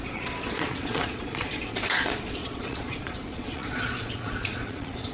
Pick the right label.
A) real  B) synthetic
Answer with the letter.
B